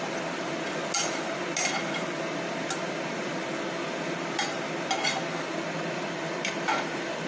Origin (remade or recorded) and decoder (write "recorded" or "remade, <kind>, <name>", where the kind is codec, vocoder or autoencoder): recorded